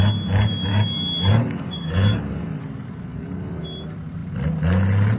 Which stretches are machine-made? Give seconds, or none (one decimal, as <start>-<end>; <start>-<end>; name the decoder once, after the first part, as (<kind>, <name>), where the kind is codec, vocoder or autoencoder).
0.7-2.6 (codec, DAC); 3.1-3.6